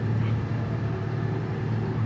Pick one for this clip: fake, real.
fake